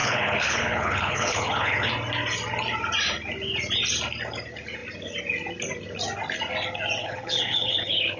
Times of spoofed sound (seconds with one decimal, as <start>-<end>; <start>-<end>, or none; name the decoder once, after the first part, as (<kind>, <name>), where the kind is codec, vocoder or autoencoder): 0.0-1.9 (codec, HILCodec); 7.0-8.2